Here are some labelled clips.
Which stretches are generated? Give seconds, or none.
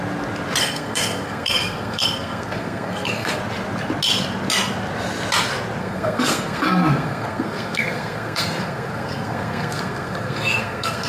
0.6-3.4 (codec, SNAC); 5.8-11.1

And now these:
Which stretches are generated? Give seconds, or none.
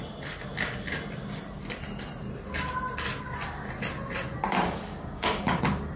4.9-5.6 (codec, DAC)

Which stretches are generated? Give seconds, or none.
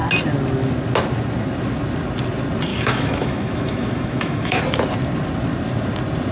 2.7-4.6 (autoencoder, DAC-VAE)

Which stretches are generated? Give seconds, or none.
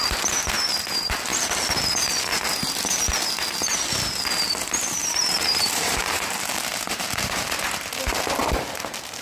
5.0-7.9 (vocoder, BigVGAN v2)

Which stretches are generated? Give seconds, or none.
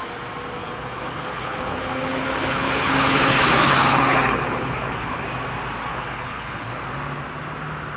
0.6-5.2 (codec, HILCodec); 5.9-6.8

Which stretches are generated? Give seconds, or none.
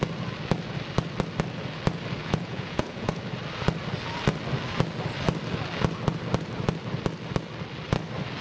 2.2-3.2 (vocoder, Vocos)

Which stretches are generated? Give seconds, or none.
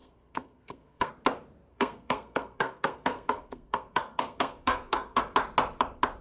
0.0-1.1 (codec, SNAC); 1.7-5.2